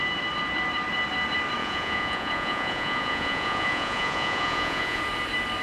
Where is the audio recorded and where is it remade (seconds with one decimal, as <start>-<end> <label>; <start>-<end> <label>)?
0.0-1.6 recorded; 1.6-5.0 remade; 5.0-5.6 recorded